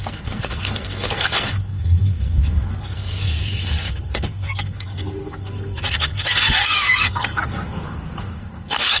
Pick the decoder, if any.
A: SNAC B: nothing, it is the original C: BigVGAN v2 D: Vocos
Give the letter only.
A